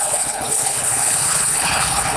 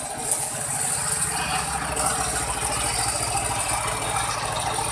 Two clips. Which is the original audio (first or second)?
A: second